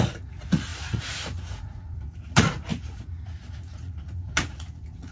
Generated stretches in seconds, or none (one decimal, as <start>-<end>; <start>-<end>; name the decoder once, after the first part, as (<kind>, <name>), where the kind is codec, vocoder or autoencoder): 0.0-5.1 (vocoder, Vocos)